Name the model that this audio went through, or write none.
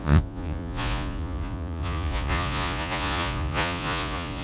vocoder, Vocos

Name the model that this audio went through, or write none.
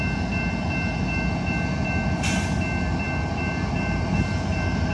none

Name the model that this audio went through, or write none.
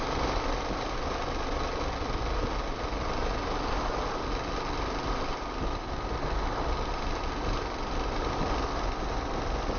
none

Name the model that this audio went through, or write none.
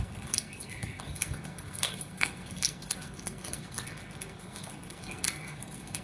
codec, SNAC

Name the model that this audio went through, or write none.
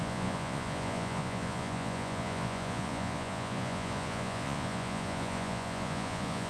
vocoder, Vocos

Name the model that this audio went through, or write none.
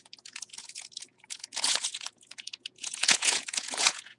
vocoder, Vocos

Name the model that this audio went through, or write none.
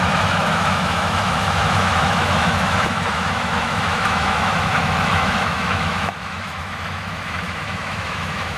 autoencoder, DAC-VAE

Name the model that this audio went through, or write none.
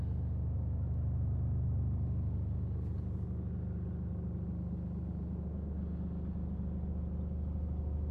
none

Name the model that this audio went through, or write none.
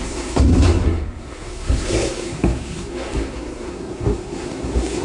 codec, SNAC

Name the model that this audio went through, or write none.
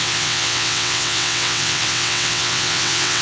vocoder, WaveNeXt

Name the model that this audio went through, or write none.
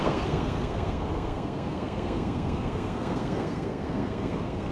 codec, SNAC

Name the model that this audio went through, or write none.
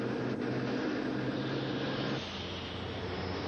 none